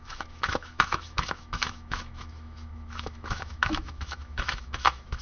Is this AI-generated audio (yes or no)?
yes